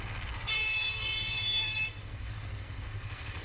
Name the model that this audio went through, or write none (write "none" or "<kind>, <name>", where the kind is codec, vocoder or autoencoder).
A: codec, SNAC